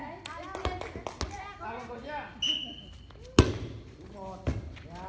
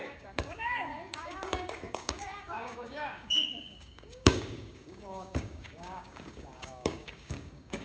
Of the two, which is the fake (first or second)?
second